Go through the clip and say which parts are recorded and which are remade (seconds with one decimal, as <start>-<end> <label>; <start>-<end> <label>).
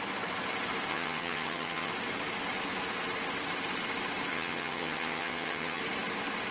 0.0-0.9 recorded; 0.9-1.9 remade; 1.9-4.3 recorded; 4.3-5.8 remade; 5.8-6.5 recorded